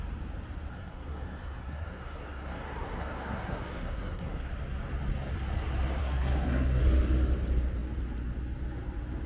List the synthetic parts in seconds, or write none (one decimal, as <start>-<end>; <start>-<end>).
0.7-4.5; 6.0-6.8

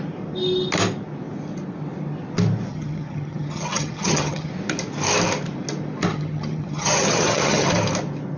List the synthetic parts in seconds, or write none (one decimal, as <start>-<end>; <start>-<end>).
2.7-4.5; 6.1-7.7

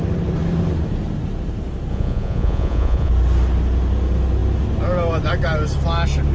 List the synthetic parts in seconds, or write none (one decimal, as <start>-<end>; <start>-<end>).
1.9-3.1

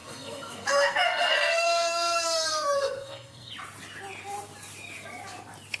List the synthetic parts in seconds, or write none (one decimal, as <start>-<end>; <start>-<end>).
0.0-3.5